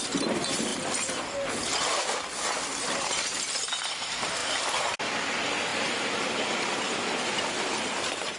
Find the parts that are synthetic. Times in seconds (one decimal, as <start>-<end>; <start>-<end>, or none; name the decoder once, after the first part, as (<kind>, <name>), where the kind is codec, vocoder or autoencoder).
0.0-4.4 (vocoder, BigVGAN v2); 5.0-8.4

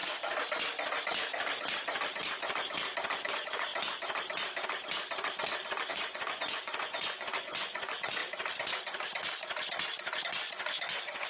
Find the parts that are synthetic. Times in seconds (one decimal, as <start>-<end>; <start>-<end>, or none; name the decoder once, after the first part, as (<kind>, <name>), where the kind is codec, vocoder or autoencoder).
3.3-3.7 (vocoder, Vocos); 5.9-8.2; 10.2-11.3

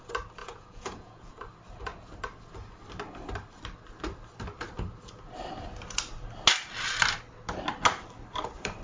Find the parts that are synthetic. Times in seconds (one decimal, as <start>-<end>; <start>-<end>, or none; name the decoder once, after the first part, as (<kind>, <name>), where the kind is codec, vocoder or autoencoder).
0.4-1.3 (vocoder, Vocos)

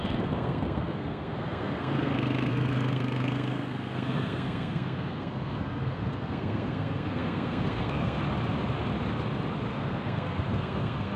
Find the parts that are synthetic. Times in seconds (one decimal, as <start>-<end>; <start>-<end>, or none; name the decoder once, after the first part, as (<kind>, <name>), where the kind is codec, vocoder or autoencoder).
0.0-8.2 (codec, SNAC); 9.7-11.2